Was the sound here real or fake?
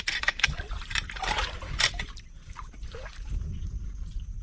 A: real